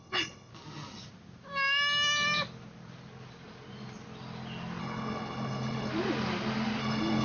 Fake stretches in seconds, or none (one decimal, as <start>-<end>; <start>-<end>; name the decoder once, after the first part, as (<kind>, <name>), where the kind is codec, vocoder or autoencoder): 0.0-0.5 (codec, HILCodec); 4.8-5.9; 6.8-7.2